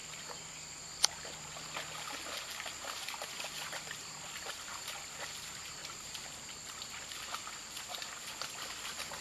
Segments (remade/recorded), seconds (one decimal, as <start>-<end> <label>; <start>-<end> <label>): 0.0-5.8 recorded; 5.8-6.7 remade; 6.7-9.2 recorded